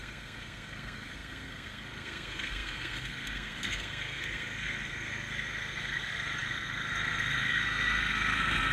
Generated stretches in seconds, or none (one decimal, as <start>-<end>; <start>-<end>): 0.0-8.7